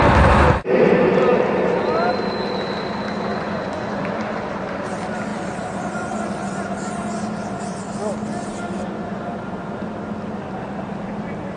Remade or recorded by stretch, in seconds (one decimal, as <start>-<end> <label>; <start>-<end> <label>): 0.0-3.3 recorded; 3.3-4.5 remade; 4.5-8.8 recorded; 8.8-9.4 remade; 9.4-11.6 recorded